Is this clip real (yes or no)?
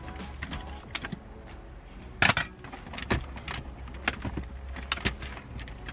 yes